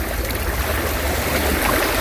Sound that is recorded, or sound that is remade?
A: recorded